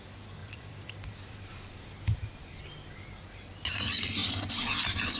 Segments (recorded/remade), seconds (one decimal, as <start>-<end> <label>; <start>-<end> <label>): 0.0-0.4 recorded; 0.4-2.6 remade; 2.6-5.2 recorded

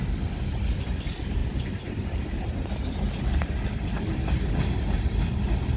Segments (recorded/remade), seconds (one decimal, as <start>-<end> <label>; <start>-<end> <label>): 0.0-1.4 recorded; 1.4-2.7 remade; 2.7-5.8 recorded